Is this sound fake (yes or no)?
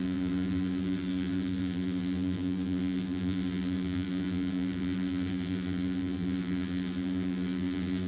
yes